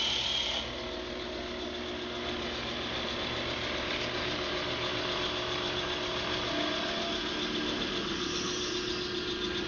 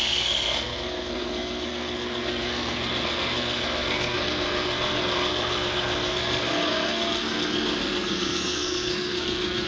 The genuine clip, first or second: first